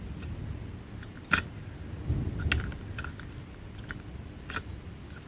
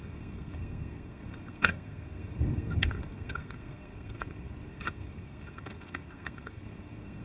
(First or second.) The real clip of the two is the first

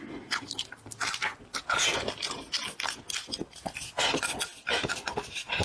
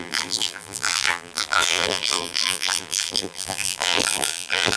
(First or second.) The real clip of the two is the first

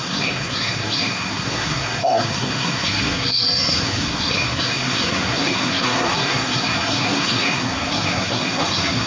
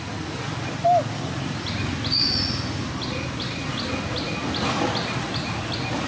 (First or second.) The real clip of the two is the second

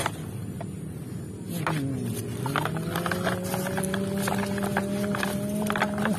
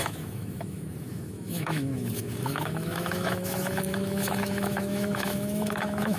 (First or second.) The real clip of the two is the first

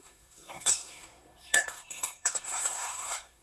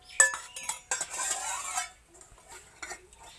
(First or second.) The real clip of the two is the second